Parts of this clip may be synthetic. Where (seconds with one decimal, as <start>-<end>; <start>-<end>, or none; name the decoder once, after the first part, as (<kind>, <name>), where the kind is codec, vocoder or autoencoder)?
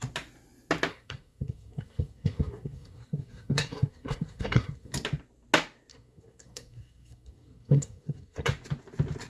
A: 0.9-4.9 (codec, SNAC); 5.9-8.5